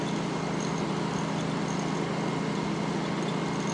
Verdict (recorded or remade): recorded